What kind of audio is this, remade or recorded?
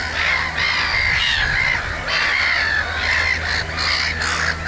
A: recorded